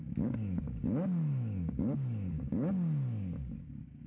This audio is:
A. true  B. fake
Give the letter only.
B